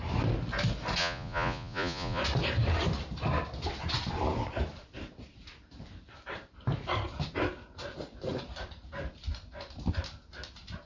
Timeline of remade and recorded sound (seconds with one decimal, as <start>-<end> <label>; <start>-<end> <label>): 0.0-1.0 recorded; 1.0-2.2 remade; 2.2-10.9 recorded